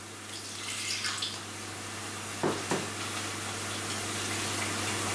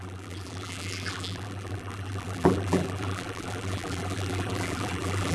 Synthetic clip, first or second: second